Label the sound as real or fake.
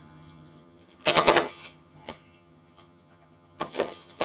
fake